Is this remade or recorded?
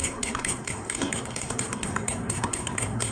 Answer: remade